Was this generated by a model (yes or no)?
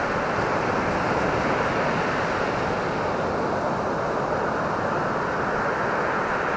no